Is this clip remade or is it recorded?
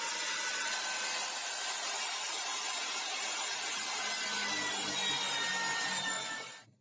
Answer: recorded